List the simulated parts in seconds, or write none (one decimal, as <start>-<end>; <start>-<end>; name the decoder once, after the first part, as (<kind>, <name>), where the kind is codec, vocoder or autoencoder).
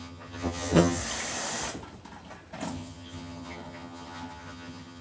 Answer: 0.0-1.0 (vocoder, HiFi-GAN); 2.7-5.0